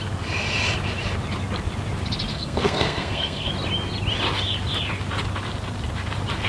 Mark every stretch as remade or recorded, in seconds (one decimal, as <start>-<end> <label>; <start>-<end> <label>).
0.0-2.3 recorded; 2.3-3.5 remade; 3.5-6.5 recorded